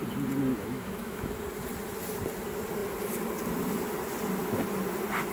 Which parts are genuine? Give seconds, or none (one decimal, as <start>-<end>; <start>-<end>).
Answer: 0.0-0.5; 1.3-5.3